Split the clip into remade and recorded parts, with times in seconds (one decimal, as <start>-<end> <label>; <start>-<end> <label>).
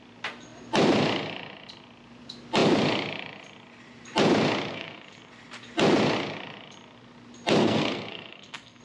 0.0-4.7 recorded; 4.7-5.3 remade; 5.3-7.6 recorded; 7.6-8.8 remade